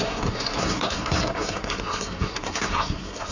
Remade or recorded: remade